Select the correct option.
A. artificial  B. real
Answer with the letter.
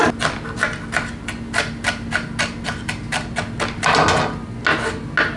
B